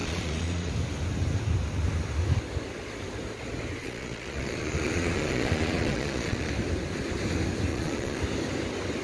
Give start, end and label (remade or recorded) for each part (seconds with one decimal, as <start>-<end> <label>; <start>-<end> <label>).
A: 0.0-0.7 remade; 0.7-3.8 recorded; 3.8-6.5 remade; 6.5-7.7 recorded; 7.7-8.2 remade; 8.2-9.0 recorded